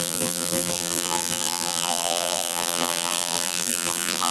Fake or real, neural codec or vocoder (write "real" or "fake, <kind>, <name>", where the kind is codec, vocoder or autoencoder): fake, vocoder, BigVGAN v2